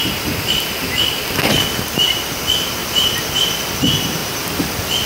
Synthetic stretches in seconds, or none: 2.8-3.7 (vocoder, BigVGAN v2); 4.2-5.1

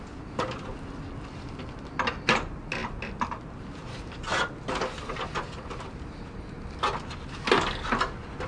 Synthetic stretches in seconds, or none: none

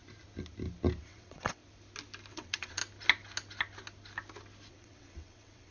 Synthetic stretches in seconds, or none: 1.0-1.6 (vocoder, WaveNeXt); 2.3-2.8; 4.7-5.7

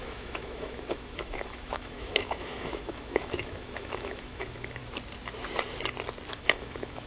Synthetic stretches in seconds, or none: 0.0-4.8 (autoencoder, DAC-VAE); 6.3-7.1

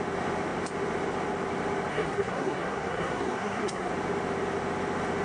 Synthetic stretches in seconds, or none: 1.9-3.9 (codec, SNAC)

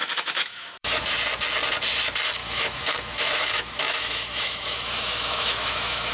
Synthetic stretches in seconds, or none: 0.0-1.0 (autoencoder, DAC-VAE); 2.4-6.1

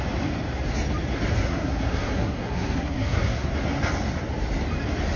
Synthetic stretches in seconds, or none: 1.4-3.5 (codec, SNAC)

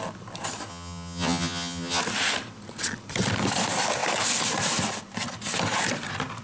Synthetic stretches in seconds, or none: 0.7-2.0 (vocoder, HiFi-GAN)